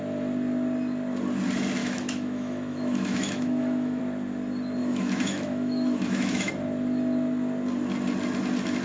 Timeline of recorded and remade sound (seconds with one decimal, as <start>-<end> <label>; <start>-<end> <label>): 0.0-1.8 recorded; 1.8-4.0 remade; 4.0-4.8 recorded; 4.8-6.5 remade; 6.5-8.8 recorded